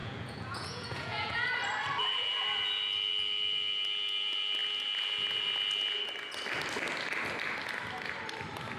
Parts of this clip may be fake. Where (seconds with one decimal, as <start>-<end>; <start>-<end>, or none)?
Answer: 0.0-1.5